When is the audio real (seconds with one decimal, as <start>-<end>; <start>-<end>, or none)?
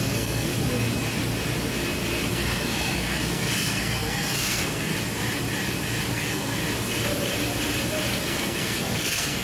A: 0.5-2.3; 4.9-6.1; 6.6-8.2